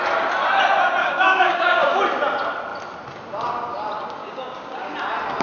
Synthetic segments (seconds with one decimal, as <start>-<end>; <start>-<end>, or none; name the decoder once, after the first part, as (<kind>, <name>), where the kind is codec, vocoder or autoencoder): 1.0-2.0 (codec, DAC); 4.2-4.9